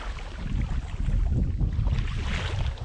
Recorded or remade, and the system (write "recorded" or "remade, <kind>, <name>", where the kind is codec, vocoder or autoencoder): recorded